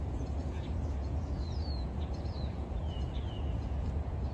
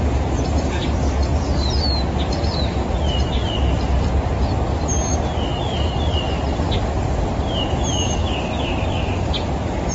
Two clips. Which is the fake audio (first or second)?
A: first